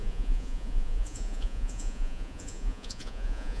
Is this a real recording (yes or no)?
no